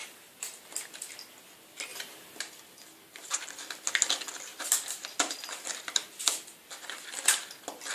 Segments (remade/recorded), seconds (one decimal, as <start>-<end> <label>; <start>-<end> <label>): 0.0-0.6 remade; 0.6-7.9 recorded